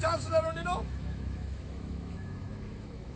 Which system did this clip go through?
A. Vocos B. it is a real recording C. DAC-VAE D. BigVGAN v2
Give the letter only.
C